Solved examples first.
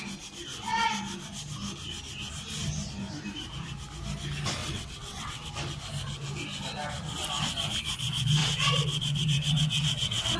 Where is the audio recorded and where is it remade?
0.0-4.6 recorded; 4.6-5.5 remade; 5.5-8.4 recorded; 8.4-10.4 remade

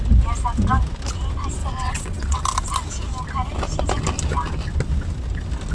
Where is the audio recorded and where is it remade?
0.0-1.6 recorded; 1.6-2.4 remade; 2.4-5.7 recorded

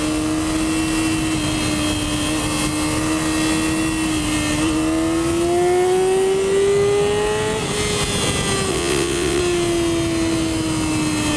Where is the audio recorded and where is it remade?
0.0-8.7 recorded; 8.7-9.4 remade; 9.4-11.4 recorded